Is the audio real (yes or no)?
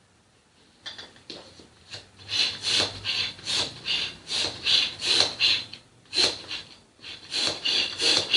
no